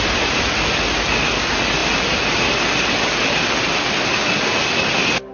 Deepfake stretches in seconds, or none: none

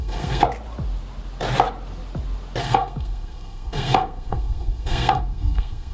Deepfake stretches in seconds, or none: 0.0-0.4 (codec, SNAC); 2.6-5.9

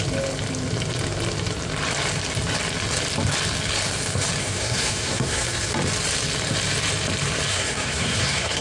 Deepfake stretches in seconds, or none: 4.4-5.7 (codec, SNAC); 7.5-8.6

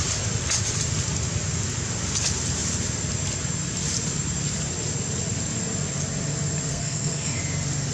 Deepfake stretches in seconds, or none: 6.7-7.4 (codec, SNAC)